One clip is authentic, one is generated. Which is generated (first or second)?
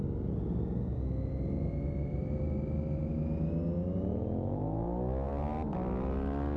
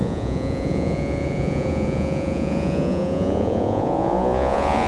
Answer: second